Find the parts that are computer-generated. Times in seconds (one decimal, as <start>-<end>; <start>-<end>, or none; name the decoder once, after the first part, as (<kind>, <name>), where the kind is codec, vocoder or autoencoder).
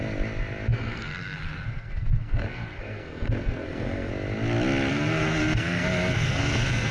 0.7-4.1 (codec, SNAC); 4.9-6.9